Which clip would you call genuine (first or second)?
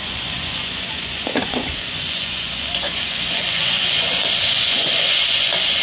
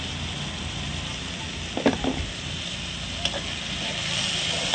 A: second